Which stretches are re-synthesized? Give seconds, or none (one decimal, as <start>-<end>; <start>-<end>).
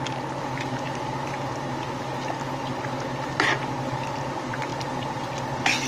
none